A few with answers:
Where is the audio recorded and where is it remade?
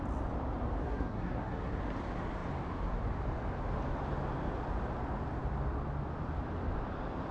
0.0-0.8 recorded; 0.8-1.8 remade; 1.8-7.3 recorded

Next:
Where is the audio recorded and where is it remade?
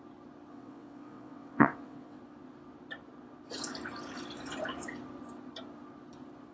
0.0-0.5 recorded; 0.5-2.2 remade; 2.2-6.5 recorded